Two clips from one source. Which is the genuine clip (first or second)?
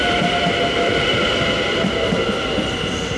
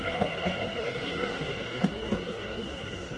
first